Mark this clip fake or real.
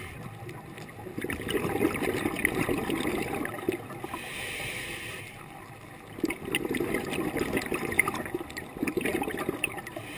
real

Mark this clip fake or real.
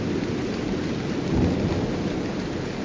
real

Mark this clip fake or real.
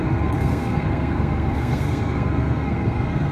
fake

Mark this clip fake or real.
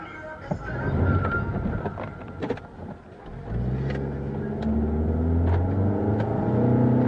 real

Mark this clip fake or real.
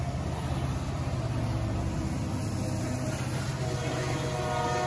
real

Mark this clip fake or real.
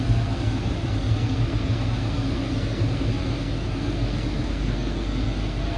fake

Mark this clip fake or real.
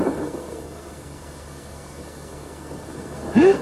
fake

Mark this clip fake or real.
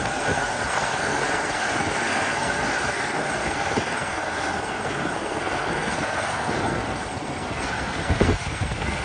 fake